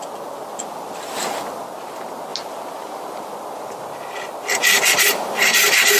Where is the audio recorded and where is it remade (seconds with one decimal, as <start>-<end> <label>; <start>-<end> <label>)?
0.0-6.0 recorded